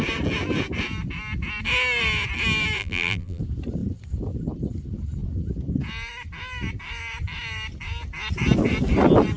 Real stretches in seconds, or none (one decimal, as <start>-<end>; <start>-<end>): 0.0-2.8; 3.4-9.4